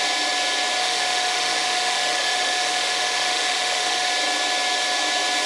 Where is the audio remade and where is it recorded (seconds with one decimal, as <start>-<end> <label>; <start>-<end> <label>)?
0.0-0.8 recorded; 0.8-4.1 remade; 4.1-5.5 recorded